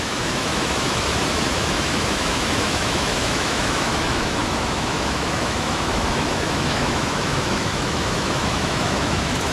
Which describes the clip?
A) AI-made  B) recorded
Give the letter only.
A